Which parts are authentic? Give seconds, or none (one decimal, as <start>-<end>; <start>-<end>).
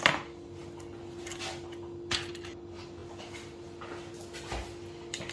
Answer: 0.0-3.0; 4.1-5.3